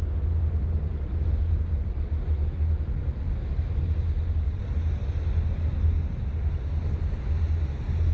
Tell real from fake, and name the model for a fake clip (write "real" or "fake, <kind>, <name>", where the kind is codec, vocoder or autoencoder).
real